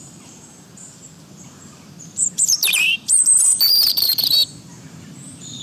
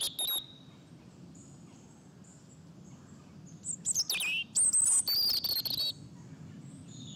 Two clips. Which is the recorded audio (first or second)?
second